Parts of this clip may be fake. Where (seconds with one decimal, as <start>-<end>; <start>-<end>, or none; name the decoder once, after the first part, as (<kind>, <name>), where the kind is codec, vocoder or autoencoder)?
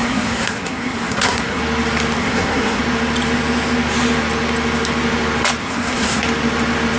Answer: 0.0-1.6 (codec, SNAC); 2.2-2.8; 5.6-6.2